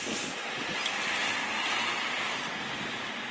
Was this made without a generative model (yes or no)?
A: yes